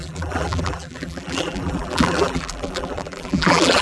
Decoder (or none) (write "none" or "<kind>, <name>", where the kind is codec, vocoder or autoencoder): vocoder, BigVGAN v2